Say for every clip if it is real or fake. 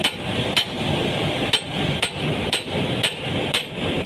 real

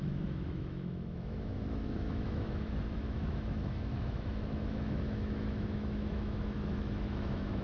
fake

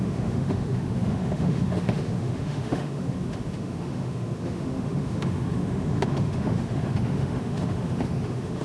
fake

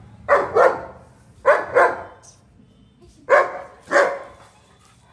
real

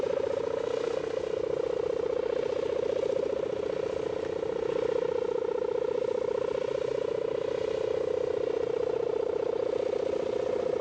real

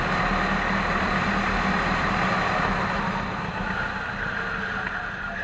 real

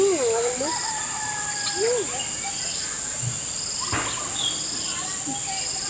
real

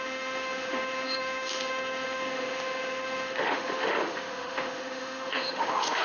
fake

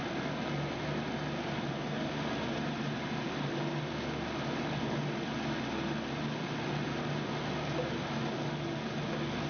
real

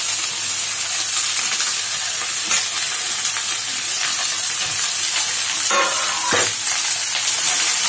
real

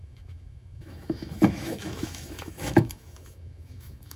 fake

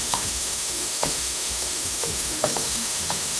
fake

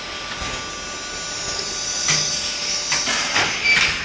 real